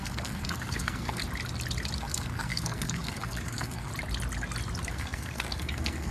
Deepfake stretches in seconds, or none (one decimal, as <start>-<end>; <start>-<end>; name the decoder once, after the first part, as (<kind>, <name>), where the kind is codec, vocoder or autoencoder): 0.0-1.2 (codec, SNAC); 2.0-3.9; 4.9-6.1